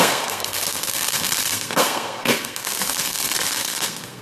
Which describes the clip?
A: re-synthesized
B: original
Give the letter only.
A